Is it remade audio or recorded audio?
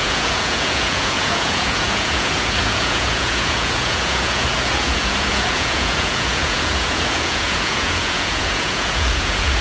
remade